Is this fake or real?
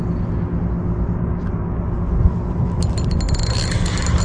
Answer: real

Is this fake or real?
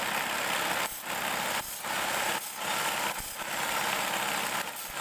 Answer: real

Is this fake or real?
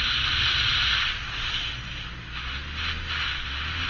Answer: real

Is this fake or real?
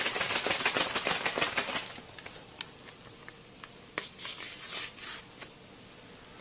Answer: real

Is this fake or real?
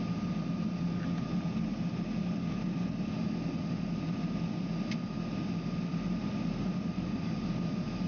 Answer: real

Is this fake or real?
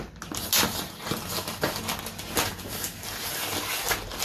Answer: real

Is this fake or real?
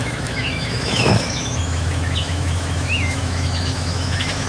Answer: fake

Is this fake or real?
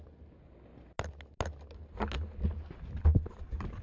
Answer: real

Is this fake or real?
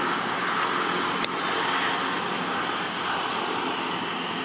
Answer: real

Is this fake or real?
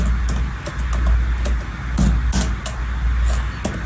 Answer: real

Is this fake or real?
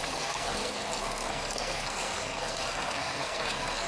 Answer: fake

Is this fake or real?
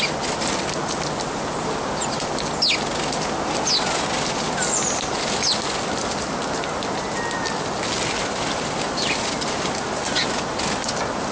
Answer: real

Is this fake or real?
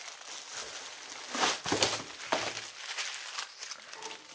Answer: real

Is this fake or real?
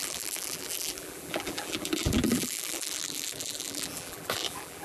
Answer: fake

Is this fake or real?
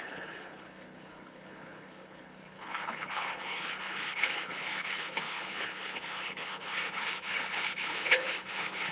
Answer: fake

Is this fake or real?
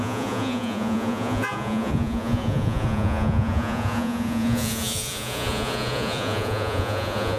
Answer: fake